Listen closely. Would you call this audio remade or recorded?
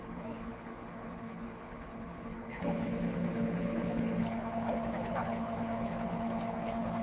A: remade